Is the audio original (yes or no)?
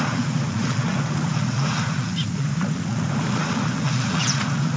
no